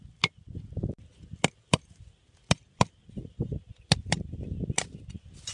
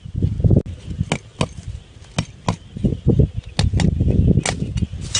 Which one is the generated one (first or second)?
first